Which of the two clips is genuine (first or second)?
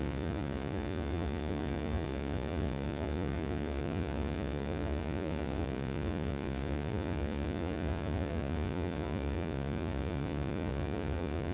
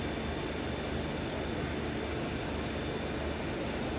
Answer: second